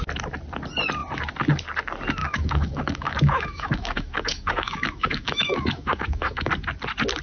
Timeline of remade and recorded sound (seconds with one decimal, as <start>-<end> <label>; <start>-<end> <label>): 0.0-2.2 recorded; 2.2-6.5 remade; 6.5-7.2 recorded